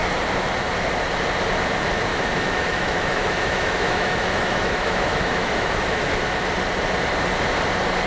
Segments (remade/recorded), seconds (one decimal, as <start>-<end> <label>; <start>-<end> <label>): 0.0-2.1 recorded; 2.1-6.0 remade; 6.0-8.1 recorded